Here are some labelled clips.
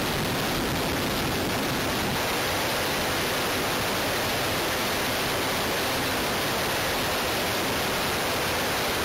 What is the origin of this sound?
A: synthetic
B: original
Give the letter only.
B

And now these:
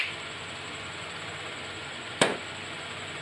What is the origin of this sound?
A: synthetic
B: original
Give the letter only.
A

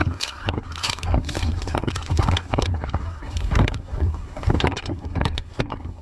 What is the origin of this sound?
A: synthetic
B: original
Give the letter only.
A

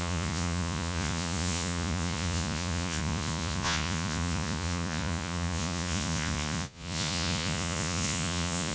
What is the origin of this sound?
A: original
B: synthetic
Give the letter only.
B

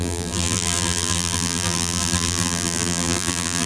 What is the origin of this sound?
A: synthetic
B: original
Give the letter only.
A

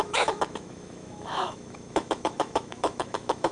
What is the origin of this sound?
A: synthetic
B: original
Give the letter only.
A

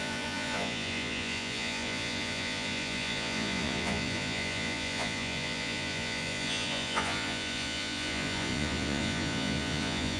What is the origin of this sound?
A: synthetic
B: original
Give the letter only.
A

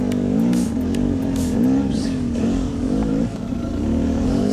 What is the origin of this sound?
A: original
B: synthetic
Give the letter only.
B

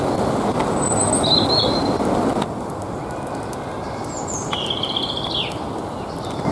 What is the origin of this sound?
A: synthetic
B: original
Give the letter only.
B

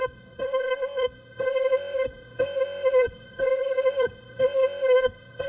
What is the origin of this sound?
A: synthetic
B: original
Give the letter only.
A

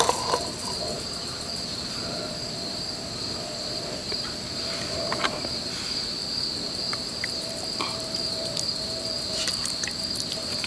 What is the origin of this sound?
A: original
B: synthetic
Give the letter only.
B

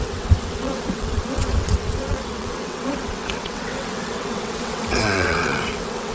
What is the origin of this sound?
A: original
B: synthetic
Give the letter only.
B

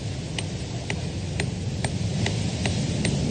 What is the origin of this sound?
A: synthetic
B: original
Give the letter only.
B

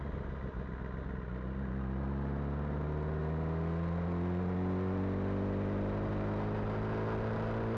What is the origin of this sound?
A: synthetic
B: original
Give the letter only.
B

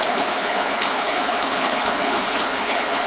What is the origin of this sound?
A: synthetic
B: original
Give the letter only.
A